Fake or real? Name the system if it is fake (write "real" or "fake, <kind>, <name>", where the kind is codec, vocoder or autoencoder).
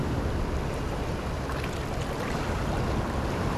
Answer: real